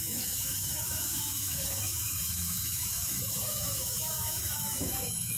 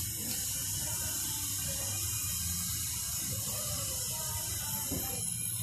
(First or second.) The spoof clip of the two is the first